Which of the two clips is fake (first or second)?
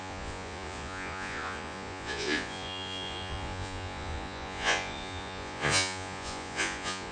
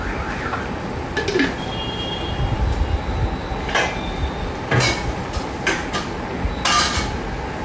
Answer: first